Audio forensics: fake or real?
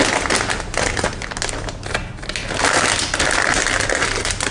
real